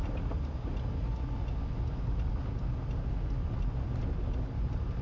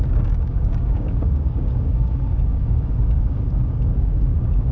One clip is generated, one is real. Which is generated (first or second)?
second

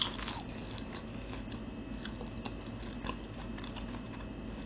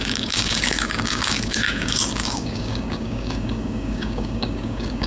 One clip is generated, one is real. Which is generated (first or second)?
second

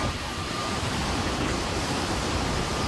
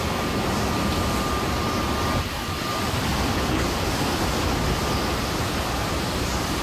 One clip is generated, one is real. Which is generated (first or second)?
first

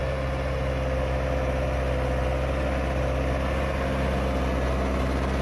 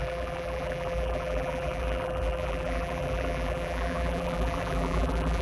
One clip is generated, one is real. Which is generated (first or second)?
second